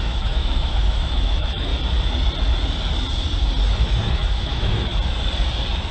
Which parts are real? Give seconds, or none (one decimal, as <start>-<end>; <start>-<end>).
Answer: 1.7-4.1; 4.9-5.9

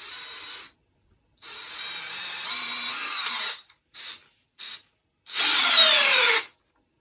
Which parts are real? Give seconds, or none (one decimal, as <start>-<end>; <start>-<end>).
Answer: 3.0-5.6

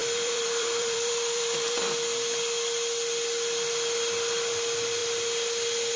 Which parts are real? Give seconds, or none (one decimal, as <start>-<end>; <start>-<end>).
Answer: 1.8-6.0

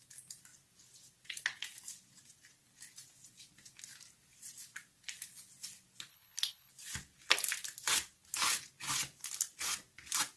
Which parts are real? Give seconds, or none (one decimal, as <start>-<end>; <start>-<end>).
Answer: 0.0-6.1; 6.7-10.4

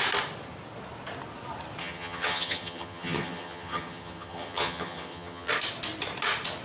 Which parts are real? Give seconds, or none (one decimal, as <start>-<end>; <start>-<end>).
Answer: 0.0-1.8; 5.5-6.6